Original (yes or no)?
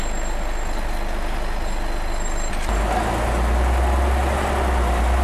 yes